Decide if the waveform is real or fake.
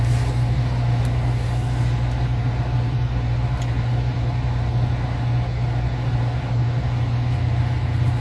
real